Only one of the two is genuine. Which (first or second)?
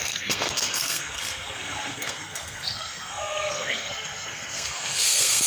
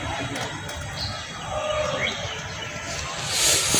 second